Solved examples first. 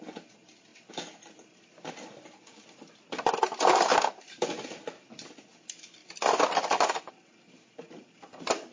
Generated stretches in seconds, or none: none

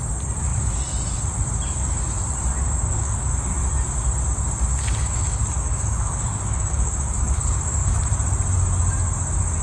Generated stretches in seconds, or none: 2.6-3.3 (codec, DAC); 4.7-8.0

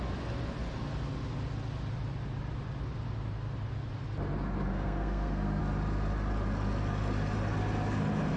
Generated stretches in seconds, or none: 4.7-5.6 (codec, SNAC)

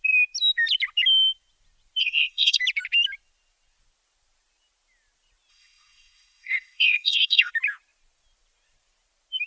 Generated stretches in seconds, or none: 2.0-2.6 (codec, SNAC); 5.5-7.5

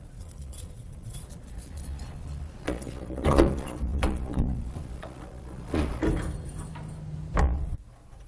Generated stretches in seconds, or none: 0.0-6.0 (vocoder, Vocos); 7.4-8.3

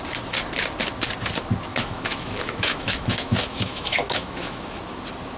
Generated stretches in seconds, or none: 1.7-4.8 (autoencoder, DAC-VAE)

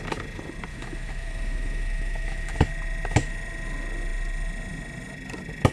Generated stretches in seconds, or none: 0.7-2.7 (autoencoder, DAC-VAE)

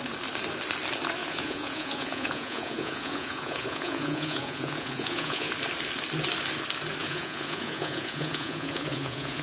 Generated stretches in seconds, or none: 1.2-5.5 (vocoder, Vocos); 7.0-9.4